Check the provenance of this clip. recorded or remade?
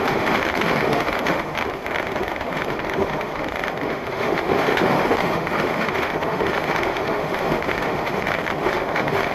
remade